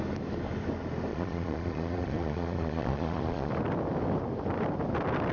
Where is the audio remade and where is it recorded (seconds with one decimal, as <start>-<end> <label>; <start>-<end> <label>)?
0.0-1.1 recorded; 1.1-3.5 remade; 3.5-5.3 recorded

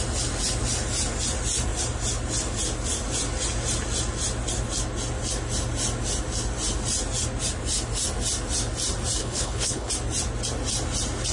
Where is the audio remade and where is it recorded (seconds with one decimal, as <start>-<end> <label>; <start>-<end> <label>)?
0.0-9.2 recorded; 9.2-9.9 remade; 9.9-11.3 recorded

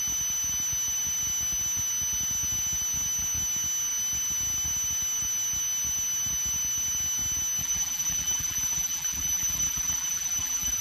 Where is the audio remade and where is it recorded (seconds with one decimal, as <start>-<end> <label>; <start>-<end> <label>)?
0.0-7.6 recorded; 7.6-10.8 remade

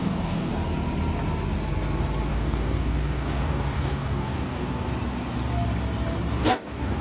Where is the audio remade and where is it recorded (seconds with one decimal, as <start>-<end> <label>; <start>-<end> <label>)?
0.0-0.5 remade; 0.5-2.3 recorded; 2.3-4.9 remade; 4.9-6.4 recorded; 6.4-7.0 remade

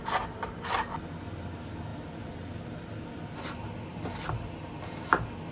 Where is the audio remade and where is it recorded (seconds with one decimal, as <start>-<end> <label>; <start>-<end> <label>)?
0.0-5.5 recorded